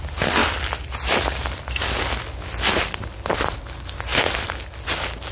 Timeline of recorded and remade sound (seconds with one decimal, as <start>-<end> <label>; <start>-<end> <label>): 0.0-5.3 recorded